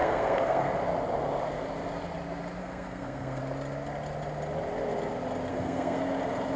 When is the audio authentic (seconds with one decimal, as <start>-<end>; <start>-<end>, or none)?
0.8-2.6; 3.4-5.5; 6.0-6.6